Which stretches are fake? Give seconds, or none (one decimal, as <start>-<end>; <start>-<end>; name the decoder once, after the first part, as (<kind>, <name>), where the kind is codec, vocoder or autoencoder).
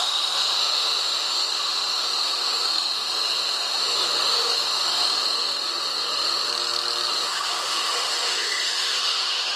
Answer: 0.0-6.5 (autoencoder, DAC-VAE); 7.1-9.6